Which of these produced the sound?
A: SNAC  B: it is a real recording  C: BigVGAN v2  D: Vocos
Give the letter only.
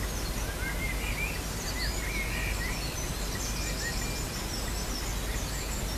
B